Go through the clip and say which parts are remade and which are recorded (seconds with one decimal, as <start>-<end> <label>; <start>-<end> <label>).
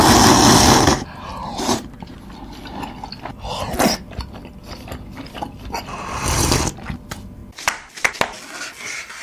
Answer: 0.0-1.3 recorded; 1.3-2.1 remade; 2.1-9.2 recorded